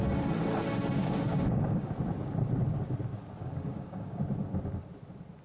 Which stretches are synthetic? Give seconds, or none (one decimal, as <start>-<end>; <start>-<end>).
1.0-1.9; 3.4-4.2